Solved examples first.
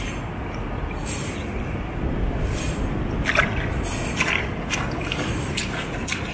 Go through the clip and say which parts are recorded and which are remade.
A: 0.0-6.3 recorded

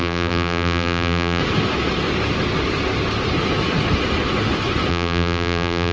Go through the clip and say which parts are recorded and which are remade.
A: 0.0-1.4 remade; 1.4-4.9 recorded; 4.9-5.9 remade

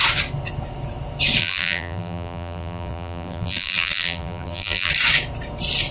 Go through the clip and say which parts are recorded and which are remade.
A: 0.0-1.4 recorded; 1.4-4.9 remade; 4.9-5.9 recorded

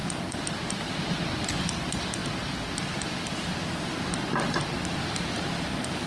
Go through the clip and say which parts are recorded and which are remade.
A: 0.0-0.8 remade; 0.8-6.1 recorded

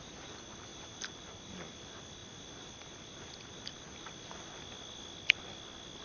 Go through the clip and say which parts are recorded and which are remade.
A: 0.0-0.7 recorded; 0.7-1.2 remade; 1.2-6.0 recorded

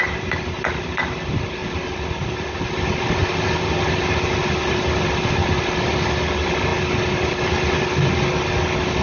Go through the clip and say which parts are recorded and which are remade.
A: 0.0-9.0 recorded

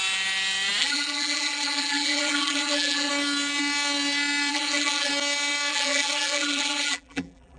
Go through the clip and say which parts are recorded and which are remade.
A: 0.0-0.8 recorded; 0.8-3.1 remade; 3.1-4.5 recorded; 4.5-5.1 remade; 5.1-5.7 recorded; 5.7-7.6 remade

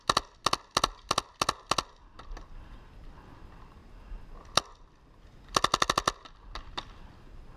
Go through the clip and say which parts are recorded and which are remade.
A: 0.0-7.6 recorded